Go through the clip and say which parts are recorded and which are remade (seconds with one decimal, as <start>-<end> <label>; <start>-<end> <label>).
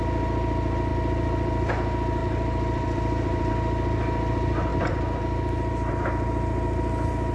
0.0-0.9 recorded; 0.9-1.7 remade; 1.7-2.2 recorded; 2.2-3.5 remade; 3.5-4.7 recorded; 4.7-5.9 remade; 5.9-7.3 recorded